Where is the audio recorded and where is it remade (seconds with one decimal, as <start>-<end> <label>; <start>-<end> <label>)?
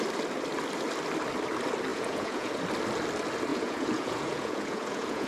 0.0-1.9 recorded; 1.9-2.6 remade; 2.6-3.5 recorded; 3.5-5.3 remade